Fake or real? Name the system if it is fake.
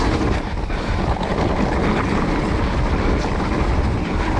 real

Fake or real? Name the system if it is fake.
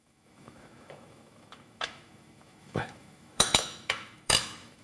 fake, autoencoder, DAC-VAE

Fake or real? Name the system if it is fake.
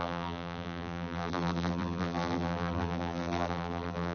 fake, vocoder, BigVGAN v2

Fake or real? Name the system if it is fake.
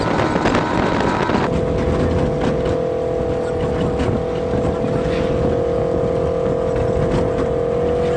real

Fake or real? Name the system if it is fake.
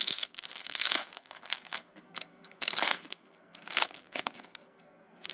fake, codec, SNAC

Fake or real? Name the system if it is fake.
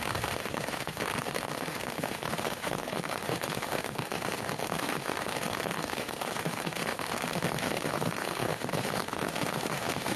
fake, autoencoder, DAC-VAE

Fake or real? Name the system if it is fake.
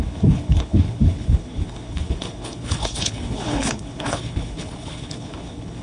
fake, codec, HILCodec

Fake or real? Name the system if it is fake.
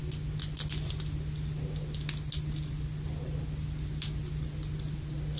real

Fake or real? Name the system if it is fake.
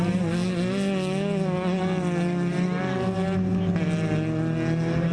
real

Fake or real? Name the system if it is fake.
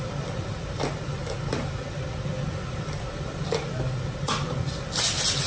real